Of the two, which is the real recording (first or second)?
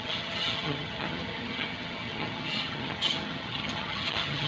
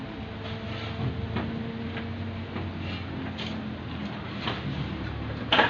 second